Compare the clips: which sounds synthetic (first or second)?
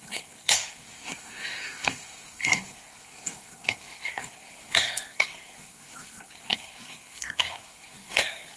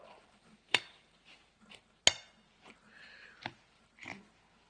first